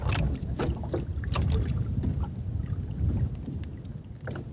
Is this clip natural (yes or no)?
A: yes